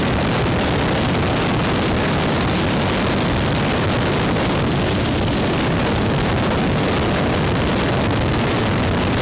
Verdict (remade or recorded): recorded